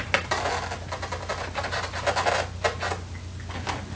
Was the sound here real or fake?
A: real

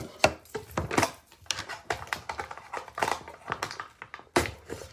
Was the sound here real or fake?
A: real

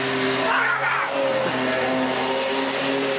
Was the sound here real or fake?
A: real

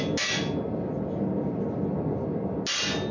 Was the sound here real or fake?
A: real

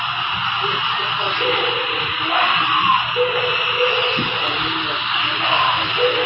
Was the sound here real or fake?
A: real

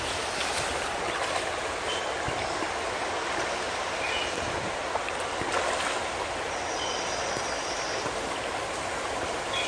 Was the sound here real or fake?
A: real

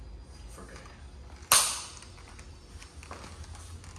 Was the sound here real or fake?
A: real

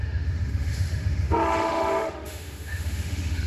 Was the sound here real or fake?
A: fake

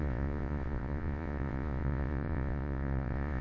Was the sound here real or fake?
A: fake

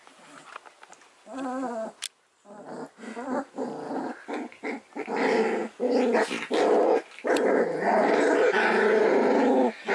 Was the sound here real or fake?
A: real